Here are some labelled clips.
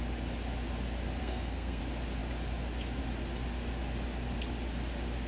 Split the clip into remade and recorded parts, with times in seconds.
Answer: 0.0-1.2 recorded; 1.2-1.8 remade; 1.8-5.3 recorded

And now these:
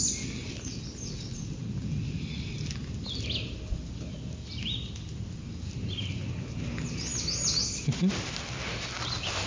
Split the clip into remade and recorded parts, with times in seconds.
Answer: 0.0-9.5 recorded

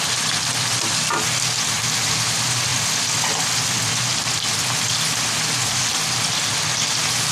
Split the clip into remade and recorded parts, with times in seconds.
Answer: 0.0-7.3 recorded